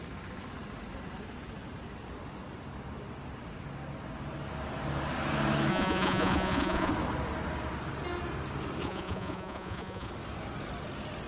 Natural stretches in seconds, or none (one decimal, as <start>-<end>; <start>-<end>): 0.0-5.7; 6.9-8.8; 10.1-11.3